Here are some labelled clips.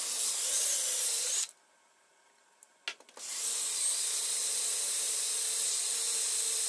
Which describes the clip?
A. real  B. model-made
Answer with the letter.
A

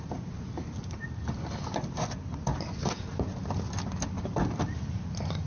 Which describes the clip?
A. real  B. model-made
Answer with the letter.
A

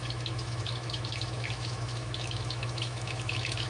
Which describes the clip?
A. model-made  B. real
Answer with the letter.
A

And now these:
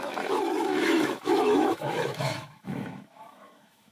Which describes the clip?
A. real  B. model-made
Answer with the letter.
B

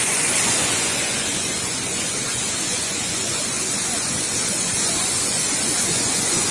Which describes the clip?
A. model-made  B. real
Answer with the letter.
A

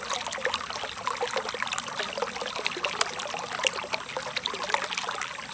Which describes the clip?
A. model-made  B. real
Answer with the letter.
B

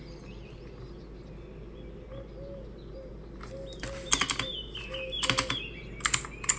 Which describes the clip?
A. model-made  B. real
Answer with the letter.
B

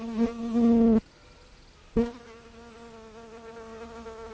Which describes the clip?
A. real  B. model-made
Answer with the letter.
A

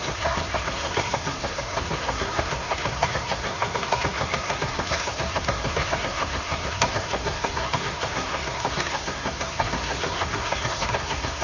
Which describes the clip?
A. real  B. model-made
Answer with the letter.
B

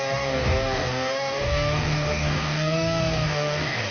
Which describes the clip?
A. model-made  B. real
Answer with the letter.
A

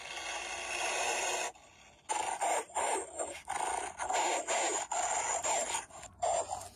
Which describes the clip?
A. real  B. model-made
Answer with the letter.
A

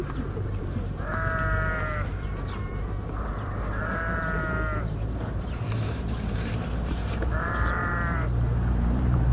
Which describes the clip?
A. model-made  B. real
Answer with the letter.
A